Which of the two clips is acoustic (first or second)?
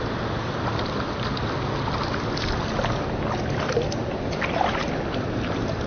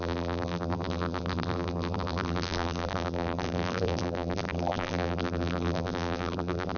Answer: first